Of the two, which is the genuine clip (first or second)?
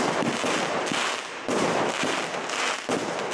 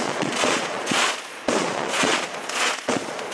first